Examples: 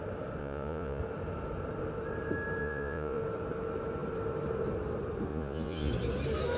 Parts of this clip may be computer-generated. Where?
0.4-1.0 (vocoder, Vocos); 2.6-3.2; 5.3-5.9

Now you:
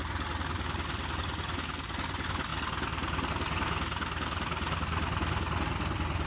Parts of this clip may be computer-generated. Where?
none

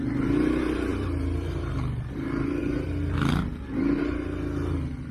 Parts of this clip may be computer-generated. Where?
none